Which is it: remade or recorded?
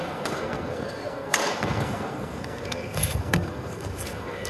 remade